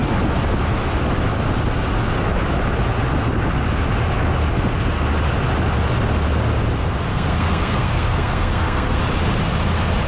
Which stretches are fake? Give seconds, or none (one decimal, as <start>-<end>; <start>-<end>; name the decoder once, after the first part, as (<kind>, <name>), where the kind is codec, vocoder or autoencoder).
7.1-9.0 (codec, SNAC)